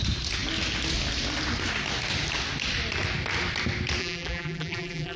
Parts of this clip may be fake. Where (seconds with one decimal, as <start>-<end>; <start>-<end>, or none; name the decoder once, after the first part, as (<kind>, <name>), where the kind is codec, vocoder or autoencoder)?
4.0-5.2 (vocoder, BigVGAN v2)